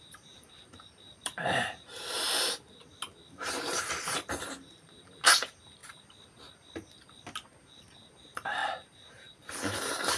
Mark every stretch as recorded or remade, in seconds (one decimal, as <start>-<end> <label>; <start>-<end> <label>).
0.0-2.8 remade; 2.8-3.3 recorded; 3.3-5.8 remade; 5.8-7.6 recorded; 7.6-10.2 remade